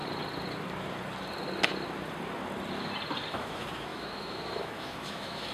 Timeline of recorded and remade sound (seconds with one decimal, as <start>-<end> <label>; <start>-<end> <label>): 0.0-3.3 recorded; 3.3-5.5 remade